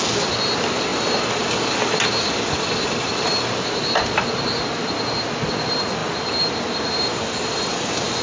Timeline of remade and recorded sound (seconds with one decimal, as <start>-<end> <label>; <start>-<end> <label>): 0.0-6.0 recorded; 6.0-7.6 remade; 7.6-8.2 recorded